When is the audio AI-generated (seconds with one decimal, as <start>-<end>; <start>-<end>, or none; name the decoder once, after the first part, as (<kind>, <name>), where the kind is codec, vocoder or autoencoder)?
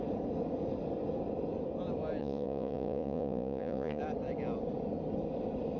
2.2-4.0 (vocoder, Vocos)